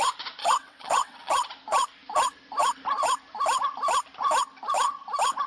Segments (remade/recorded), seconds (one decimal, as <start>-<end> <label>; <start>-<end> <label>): 0.0-0.4 recorded; 0.4-1.3 remade; 1.3-5.5 recorded